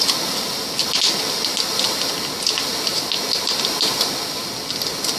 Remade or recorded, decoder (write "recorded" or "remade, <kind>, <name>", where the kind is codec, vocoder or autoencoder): recorded